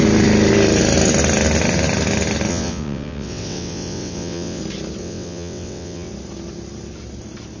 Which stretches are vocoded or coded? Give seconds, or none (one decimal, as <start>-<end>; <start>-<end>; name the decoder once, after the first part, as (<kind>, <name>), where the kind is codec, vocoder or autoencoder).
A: 2.5-4.6 (vocoder, WaveNeXt); 5.0-6.1